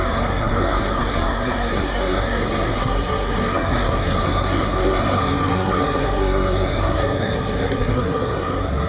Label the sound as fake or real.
fake